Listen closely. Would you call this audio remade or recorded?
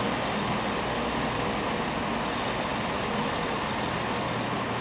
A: recorded